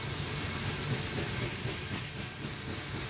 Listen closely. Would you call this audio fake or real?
real